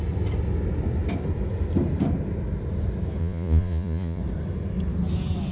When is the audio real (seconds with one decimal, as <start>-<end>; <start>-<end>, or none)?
0.0-3.2; 4.2-5.5